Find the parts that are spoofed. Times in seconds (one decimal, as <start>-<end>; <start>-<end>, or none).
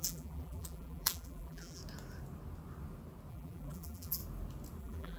0.0-1.8; 3.3-4.2; 4.8-5.2